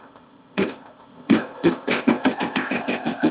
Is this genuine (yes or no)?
no